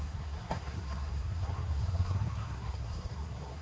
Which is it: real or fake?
fake